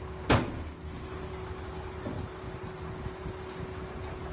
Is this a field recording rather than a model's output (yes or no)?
yes